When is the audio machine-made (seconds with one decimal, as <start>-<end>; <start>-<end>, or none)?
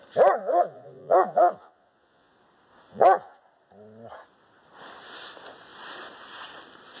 0.4-2.3; 2.9-3.4